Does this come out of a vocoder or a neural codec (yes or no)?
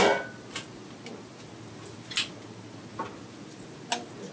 no